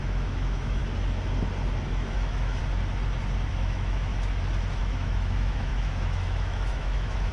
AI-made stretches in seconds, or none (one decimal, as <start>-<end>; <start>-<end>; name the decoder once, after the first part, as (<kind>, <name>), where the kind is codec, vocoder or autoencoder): 0.0-0.8 (autoencoder, DAC-VAE); 1.9-2.6; 3.5-4.1; 4.8-7.3